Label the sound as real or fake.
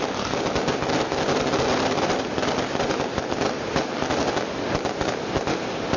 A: real